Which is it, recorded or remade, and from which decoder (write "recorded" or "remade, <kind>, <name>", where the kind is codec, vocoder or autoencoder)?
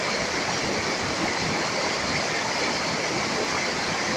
recorded